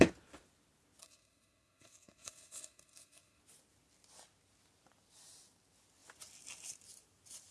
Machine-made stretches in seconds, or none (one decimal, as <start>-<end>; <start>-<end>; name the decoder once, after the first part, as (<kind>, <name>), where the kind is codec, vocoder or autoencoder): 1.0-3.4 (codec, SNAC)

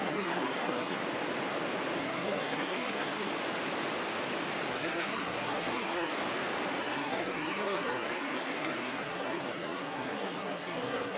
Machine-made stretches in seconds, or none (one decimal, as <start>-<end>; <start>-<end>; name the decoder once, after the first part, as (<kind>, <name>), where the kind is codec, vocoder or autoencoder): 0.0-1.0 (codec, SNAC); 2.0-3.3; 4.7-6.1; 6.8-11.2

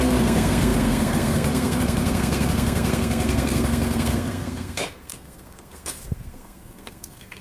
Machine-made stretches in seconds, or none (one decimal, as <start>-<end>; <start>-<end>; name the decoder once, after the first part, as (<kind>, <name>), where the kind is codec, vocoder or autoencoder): 0.0-7.4 (codec, SNAC)

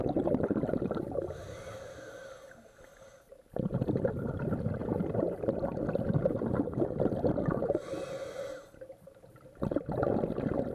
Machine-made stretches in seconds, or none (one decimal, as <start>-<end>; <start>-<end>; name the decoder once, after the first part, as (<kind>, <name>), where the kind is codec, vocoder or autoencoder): none

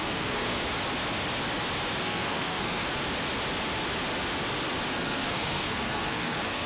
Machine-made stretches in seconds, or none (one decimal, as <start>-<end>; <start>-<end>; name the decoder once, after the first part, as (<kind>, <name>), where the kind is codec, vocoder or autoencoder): 0.0-0.6 (codec, SNAC); 2.0-2.9; 4.9-6.7